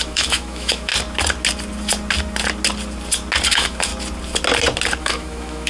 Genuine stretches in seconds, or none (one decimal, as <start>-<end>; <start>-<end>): 0.9-3.5; 3.9-5.0